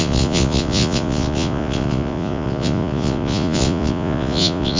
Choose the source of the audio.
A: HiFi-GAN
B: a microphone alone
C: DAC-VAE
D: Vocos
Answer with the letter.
D